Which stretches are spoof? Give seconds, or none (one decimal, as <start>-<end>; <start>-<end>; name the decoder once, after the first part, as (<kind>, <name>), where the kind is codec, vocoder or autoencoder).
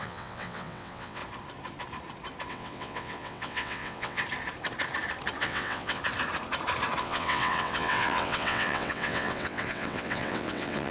0.0-1.2 (vocoder, WaveNeXt); 2.5-4.2; 5.4-6.0; 7.0-10.9